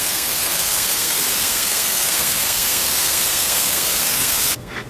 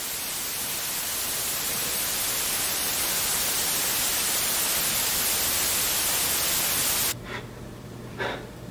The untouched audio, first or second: second